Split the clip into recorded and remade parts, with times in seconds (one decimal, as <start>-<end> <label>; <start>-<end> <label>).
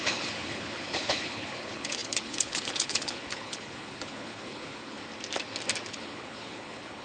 0.0-5.0 remade; 5.0-5.9 recorded; 5.9-7.0 remade